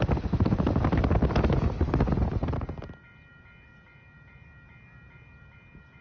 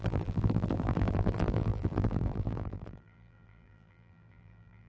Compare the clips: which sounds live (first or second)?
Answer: first